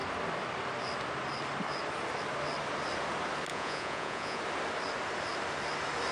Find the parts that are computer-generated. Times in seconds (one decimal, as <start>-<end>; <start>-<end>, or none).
3.5-4.4